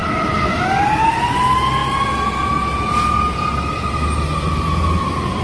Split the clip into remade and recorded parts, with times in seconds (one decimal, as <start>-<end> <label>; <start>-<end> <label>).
0.0-5.4 recorded